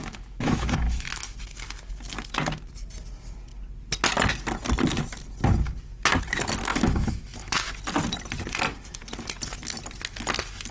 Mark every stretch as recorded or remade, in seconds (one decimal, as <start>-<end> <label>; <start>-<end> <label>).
0.0-1.4 remade; 1.4-6.7 recorded; 6.7-7.8 remade; 7.8-10.7 recorded